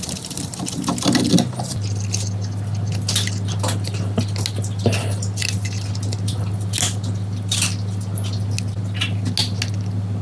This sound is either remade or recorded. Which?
recorded